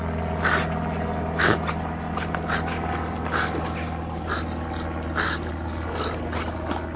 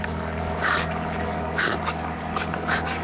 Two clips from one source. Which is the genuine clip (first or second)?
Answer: first